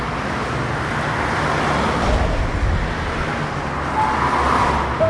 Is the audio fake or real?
real